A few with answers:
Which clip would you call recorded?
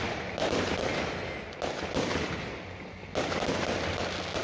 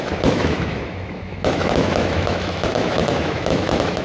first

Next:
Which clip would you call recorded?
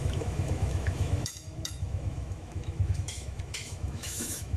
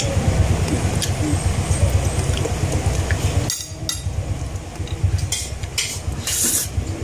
second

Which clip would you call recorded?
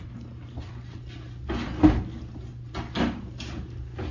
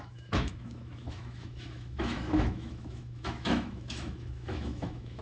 first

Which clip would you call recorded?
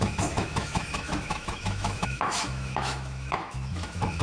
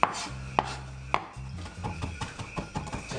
second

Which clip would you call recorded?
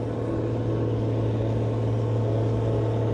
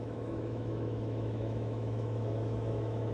first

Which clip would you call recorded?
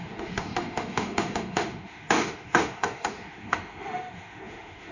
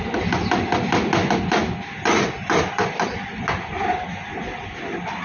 second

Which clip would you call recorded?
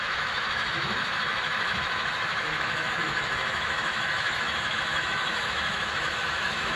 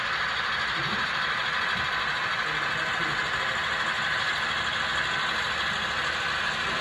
second